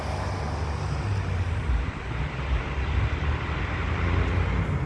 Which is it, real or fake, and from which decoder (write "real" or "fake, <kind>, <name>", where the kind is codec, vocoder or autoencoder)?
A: real